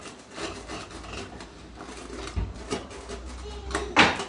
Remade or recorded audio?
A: recorded